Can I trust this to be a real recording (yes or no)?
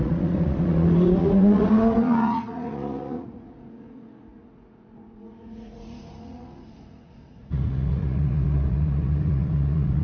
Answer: no